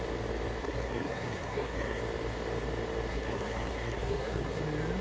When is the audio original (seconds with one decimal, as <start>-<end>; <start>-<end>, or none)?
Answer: 0.0-0.6; 2.0-3.1; 4.6-5.0